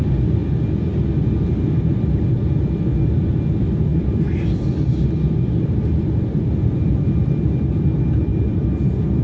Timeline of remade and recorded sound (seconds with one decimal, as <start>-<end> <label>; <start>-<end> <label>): 0.0-3.9 recorded; 3.9-7.3 remade; 7.3-8.3 recorded; 8.3-9.2 remade